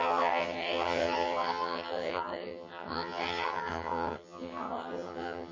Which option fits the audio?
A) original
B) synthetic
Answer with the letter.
B